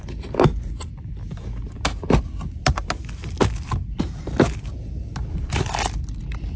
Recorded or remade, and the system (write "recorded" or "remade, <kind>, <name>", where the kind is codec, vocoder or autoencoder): recorded